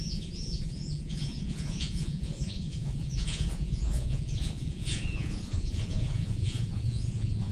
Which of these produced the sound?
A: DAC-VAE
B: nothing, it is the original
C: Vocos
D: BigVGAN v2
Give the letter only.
C